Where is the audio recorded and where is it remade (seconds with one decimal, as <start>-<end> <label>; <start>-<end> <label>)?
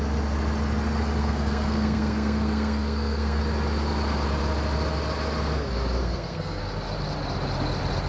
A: 0.0-1.2 recorded; 1.2-3.4 remade; 3.4-6.0 recorded; 6.0-6.6 remade; 6.6-8.1 recorded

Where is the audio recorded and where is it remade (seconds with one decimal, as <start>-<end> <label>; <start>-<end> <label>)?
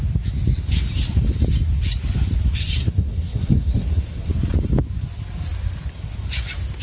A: 0.0-2.8 recorded; 2.8-4.3 remade; 4.3-6.8 recorded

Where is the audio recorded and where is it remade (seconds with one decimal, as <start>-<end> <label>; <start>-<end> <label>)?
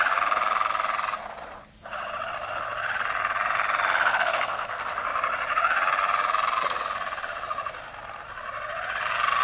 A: 0.0-4.1 recorded; 4.1-4.8 remade; 4.8-9.4 recorded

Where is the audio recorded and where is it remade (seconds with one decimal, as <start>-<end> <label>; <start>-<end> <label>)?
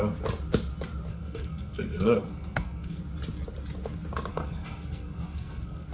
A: 0.0-1.1 recorded; 1.1-3.0 remade; 3.0-4.3 recorded; 4.3-5.9 remade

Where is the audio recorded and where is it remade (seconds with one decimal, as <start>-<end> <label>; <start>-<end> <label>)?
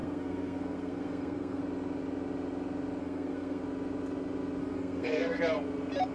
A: 0.0-1.6 remade; 1.6-3.0 recorded; 3.0-3.6 remade; 3.6-4.6 recorded; 4.6-5.4 remade; 5.4-6.1 recorded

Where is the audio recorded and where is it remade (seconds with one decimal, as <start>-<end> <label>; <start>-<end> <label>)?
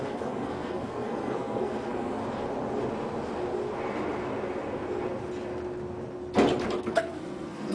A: 0.0-2.2 remade; 2.2-6.8 recorded; 6.8-7.7 remade